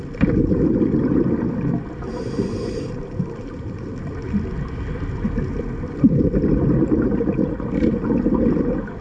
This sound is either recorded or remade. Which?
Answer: recorded